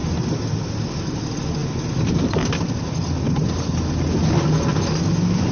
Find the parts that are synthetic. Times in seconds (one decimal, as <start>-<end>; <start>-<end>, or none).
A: none